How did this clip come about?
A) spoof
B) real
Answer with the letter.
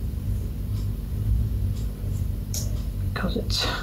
A